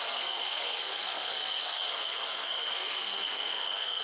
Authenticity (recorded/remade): remade